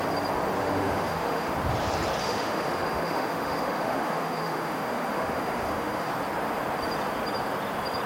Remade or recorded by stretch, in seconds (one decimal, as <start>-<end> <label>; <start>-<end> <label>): 0.0-0.6 recorded; 0.6-1.5 remade; 1.5-2.2 recorded; 2.2-6.1 remade; 6.1-8.1 recorded